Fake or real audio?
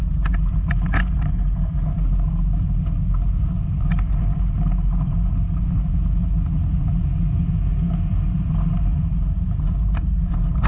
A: real